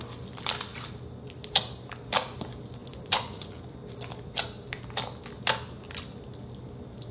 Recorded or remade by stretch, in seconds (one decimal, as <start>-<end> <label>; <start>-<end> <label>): 0.0-2.8 recorded; 2.8-3.5 remade; 3.5-7.1 recorded